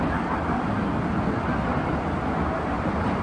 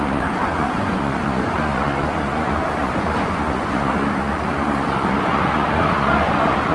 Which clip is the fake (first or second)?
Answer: second